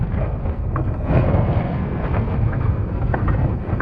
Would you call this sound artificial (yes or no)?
yes